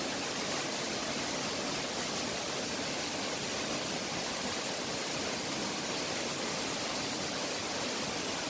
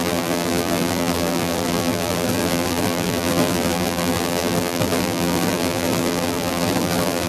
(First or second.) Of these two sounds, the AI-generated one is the second